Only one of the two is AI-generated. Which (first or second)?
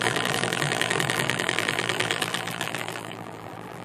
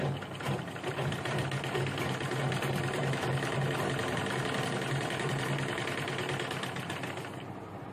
first